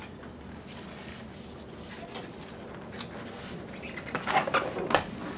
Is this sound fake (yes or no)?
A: no